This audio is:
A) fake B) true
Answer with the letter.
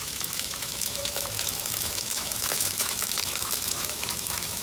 A